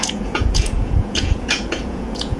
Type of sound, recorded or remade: remade